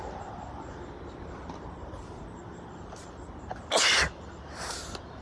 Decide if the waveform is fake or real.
real